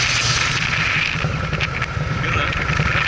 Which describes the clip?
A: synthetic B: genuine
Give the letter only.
B